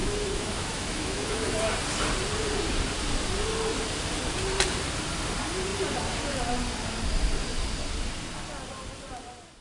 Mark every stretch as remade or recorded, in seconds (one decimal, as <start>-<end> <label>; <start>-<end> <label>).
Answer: 0.0-1.5 remade; 1.5-9.6 recorded

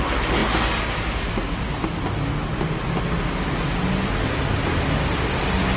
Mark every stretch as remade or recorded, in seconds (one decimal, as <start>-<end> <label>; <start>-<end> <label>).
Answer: 0.0-5.8 recorded

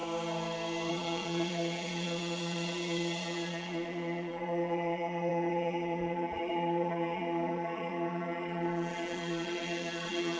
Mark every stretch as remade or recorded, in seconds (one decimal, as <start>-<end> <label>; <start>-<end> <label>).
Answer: 0.0-0.9 recorded; 0.9-10.4 remade

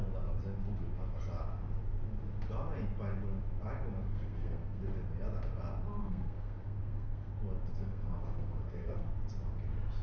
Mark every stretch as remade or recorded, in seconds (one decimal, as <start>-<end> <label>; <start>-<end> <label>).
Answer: 0.0-4.0 recorded; 4.0-4.8 remade; 4.8-6.0 recorded; 6.0-7.3 remade; 7.3-7.7 recorded; 7.7-9.1 remade; 9.1-10.0 recorded

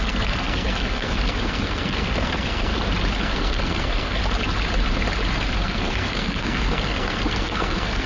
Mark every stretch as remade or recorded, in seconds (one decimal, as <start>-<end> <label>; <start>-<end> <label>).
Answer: 0.0-2.7 remade; 2.7-3.2 recorded; 3.2-4.2 remade; 4.2-5.6 recorded; 5.6-8.1 remade